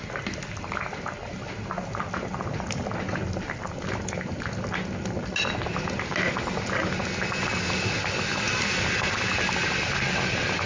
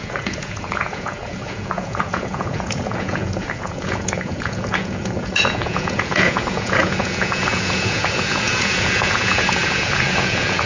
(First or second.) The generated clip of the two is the second